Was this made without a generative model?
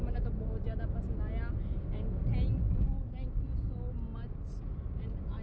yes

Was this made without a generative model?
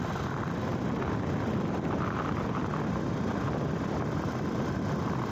yes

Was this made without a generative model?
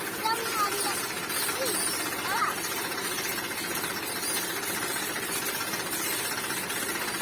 yes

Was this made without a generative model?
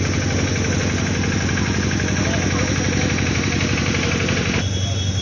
yes